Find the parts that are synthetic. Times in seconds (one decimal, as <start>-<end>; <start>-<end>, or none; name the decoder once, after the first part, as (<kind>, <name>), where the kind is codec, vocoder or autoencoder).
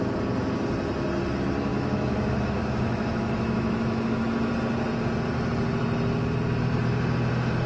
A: 1.7-4.5 (autoencoder, DAC-VAE)